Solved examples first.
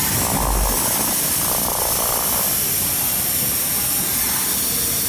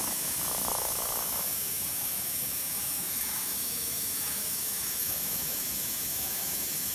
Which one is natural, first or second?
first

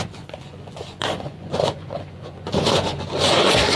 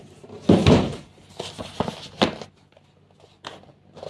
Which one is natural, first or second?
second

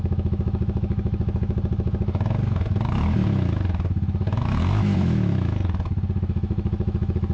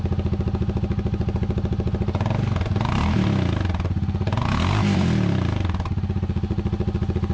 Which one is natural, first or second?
second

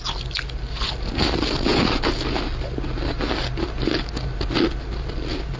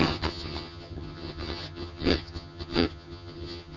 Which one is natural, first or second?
first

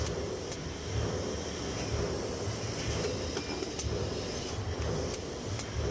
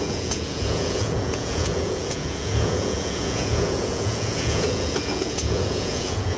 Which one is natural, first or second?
first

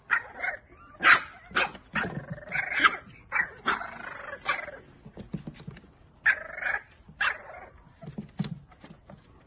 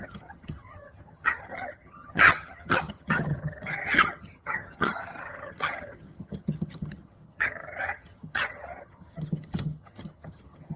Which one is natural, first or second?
first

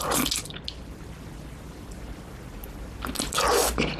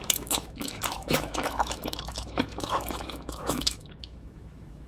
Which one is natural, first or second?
first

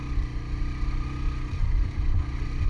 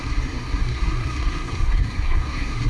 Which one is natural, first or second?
first